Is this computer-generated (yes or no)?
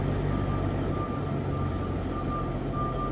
no